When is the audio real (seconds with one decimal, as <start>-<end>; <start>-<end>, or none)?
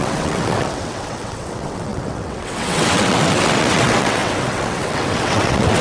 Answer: none